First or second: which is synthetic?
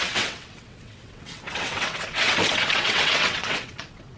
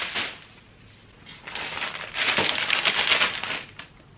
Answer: first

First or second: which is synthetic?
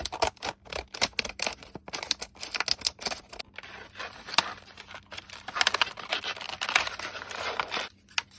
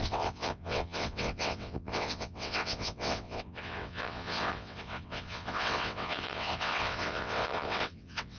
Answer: second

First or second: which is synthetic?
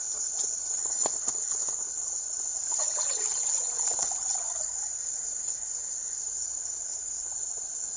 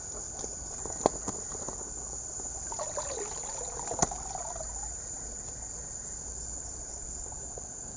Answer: first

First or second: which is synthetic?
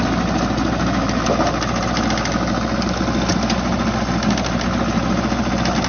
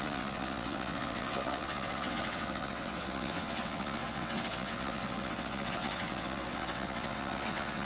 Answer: second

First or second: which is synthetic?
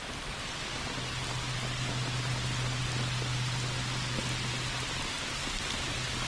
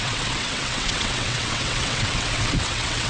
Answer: second